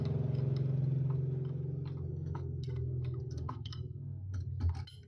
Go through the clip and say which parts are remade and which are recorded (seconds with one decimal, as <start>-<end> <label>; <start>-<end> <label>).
0.0-2.1 recorded; 2.1-4.4 remade; 4.4-5.1 recorded